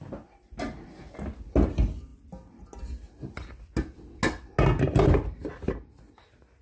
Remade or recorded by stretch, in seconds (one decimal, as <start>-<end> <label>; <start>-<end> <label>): 0.0-6.6 recorded